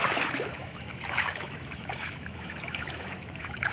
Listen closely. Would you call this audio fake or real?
fake